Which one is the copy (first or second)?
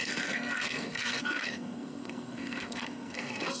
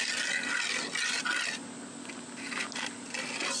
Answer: first